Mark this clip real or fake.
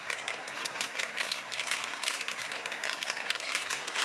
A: fake